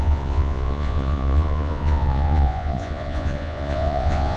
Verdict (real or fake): fake